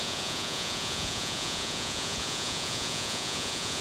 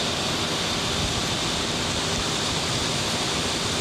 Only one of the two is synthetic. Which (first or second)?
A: first